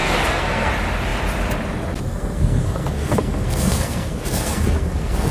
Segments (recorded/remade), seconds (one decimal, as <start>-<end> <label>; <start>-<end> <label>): 0.0-0.7 remade; 0.7-2.1 recorded; 2.1-5.3 remade